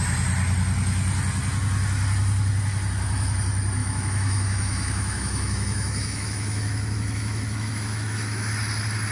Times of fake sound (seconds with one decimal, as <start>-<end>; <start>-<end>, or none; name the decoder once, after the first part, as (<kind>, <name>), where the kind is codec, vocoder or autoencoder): 3.8-8.5 (autoencoder, DAC-VAE)